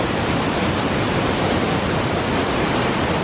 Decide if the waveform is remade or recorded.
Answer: recorded